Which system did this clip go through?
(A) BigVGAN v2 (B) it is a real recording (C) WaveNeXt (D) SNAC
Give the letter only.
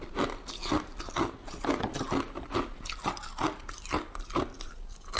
B